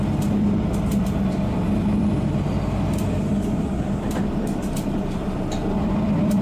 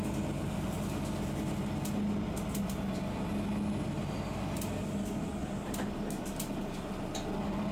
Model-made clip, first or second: first